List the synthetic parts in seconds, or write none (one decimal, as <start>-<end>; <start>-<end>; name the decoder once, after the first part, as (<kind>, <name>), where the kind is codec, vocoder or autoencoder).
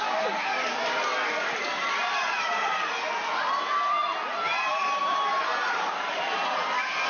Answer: none